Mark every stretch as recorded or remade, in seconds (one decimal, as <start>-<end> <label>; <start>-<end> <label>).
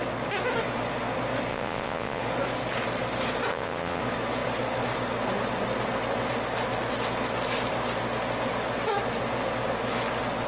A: 0.0-1.5 recorded; 1.5-2.2 remade; 2.2-3.5 recorded; 3.5-4.0 remade; 4.0-10.5 recorded